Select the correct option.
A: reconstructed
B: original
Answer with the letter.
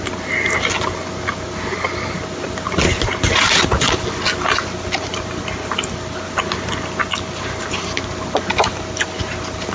B